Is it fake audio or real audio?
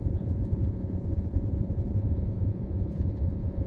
fake